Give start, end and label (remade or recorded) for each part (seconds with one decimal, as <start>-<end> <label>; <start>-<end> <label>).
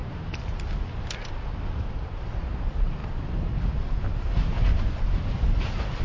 0.0-6.0 recorded